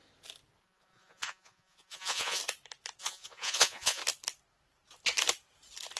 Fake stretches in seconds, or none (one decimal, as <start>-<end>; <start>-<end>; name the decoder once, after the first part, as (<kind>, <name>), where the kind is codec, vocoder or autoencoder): 0.6-2.4 (vocoder, Vocos); 3.0-4.0